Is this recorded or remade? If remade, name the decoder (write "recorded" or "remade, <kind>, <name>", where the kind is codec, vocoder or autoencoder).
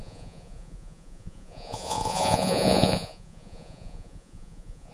remade, vocoder, Vocos